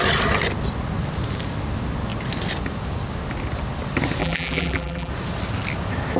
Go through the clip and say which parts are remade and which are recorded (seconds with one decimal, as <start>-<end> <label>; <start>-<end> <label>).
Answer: 0.0-4.2 recorded; 4.2-5.1 remade; 5.1-6.2 recorded

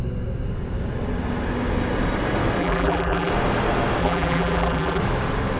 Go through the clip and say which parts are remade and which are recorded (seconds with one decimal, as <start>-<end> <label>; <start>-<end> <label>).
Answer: 0.0-2.6 recorded; 2.6-3.3 remade; 3.3-4.0 recorded; 4.0-5.0 remade; 5.0-5.6 recorded

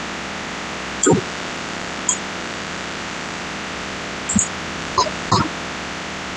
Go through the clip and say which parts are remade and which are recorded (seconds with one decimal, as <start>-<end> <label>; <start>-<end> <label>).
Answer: 0.0-1.0 recorded; 1.0-2.0 remade; 2.0-2.4 recorded; 2.4-3.4 remade; 3.4-4.8 recorded; 4.8-5.3 remade; 5.3-6.4 recorded

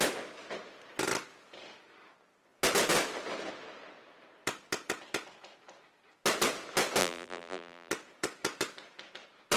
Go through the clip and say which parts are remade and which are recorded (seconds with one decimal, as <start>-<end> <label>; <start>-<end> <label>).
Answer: 0.0-7.0 recorded; 7.0-7.9 remade; 7.9-9.6 recorded